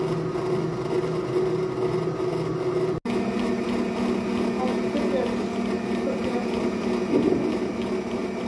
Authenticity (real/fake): real